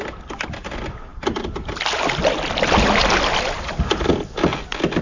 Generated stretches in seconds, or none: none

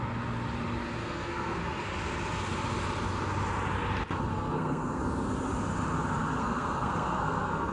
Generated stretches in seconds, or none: 1.0-1.6 (codec, SNAC); 4.3-5.0; 6.4-7.7